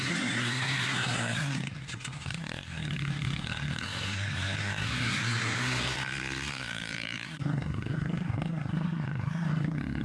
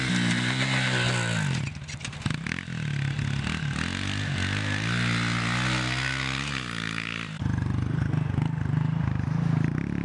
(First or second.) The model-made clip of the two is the first